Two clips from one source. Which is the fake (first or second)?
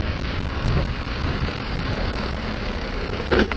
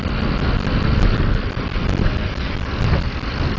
first